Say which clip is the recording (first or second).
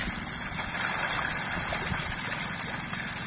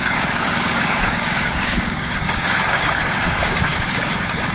first